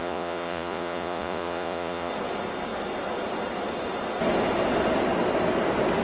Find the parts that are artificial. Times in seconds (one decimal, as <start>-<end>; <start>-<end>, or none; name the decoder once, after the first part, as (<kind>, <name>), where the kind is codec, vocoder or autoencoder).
0.0-2.1 (vocoder, Vocos)